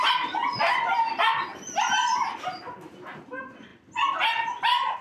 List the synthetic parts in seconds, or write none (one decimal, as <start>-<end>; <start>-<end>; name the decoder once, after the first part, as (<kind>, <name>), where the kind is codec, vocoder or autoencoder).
none